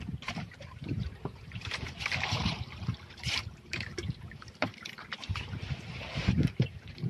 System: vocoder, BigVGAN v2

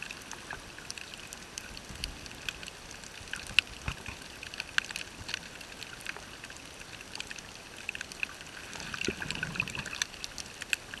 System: none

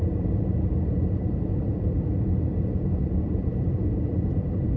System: vocoder, BigVGAN v2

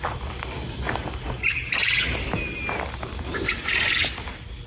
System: none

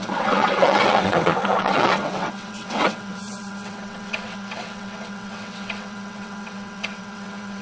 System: vocoder, WaveNeXt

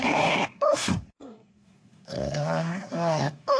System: codec, SNAC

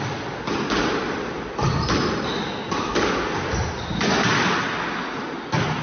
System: none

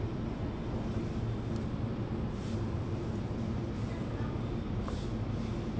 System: none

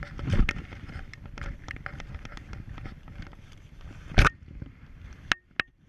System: none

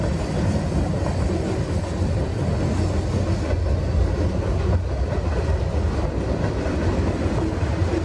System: none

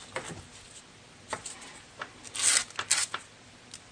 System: none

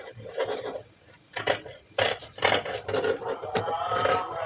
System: none